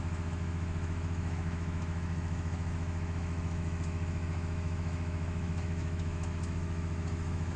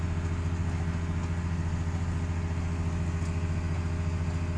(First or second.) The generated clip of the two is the first